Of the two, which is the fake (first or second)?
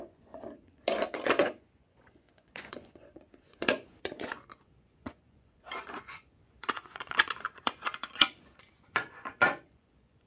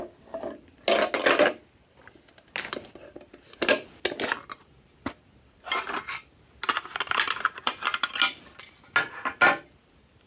first